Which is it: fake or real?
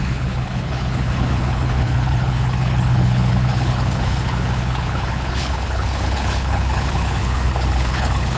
fake